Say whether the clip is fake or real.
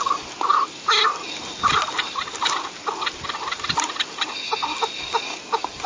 real